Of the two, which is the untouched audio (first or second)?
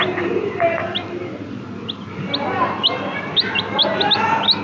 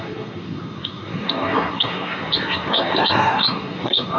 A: first